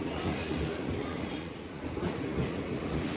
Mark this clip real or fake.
fake